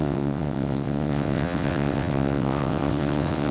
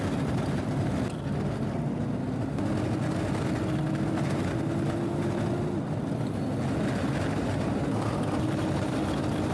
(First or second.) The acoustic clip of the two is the second